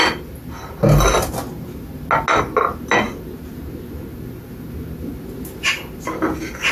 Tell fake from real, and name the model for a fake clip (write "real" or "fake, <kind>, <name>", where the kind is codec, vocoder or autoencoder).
real